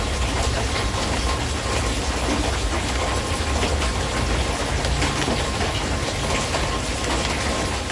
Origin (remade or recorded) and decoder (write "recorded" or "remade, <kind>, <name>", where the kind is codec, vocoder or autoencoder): recorded